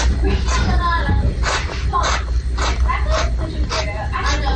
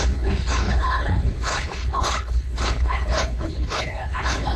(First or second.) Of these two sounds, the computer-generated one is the second